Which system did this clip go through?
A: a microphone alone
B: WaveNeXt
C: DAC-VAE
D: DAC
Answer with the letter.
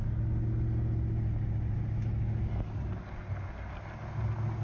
A